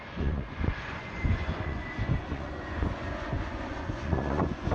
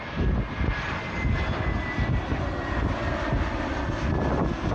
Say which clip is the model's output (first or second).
first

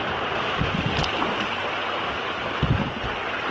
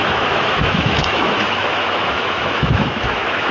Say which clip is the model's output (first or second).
second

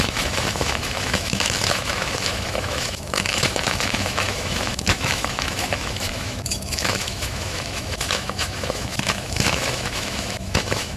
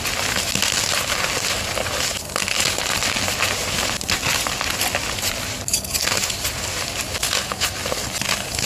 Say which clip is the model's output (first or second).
first